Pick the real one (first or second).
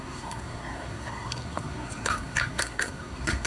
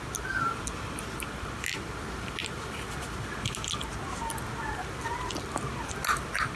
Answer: second